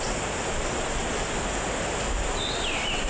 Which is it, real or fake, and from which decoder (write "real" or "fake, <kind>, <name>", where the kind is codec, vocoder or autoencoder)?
real